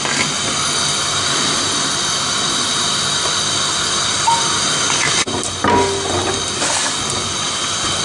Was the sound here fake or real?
real